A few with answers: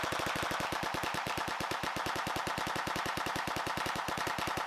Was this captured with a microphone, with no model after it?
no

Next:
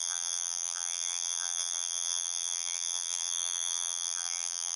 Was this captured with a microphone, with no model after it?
no